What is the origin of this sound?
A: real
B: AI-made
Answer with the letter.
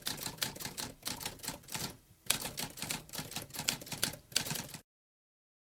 B